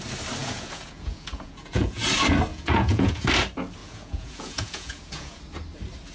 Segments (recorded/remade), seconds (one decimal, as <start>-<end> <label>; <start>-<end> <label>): 0.0-0.4 recorded; 0.4-2.0 remade; 2.0-2.5 recorded; 2.5-3.3 remade; 3.3-3.8 recorded; 3.8-5.4 remade; 5.4-6.1 recorded